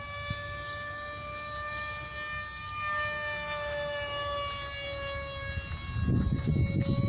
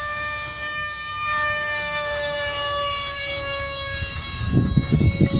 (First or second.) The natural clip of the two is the first